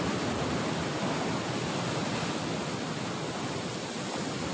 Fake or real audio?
real